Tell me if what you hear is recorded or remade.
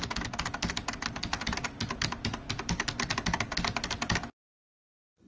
recorded